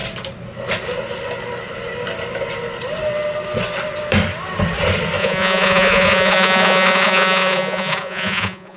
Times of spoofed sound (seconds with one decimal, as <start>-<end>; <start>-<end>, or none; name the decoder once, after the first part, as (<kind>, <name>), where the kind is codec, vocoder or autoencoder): 5.2-8.8 (vocoder, Vocos)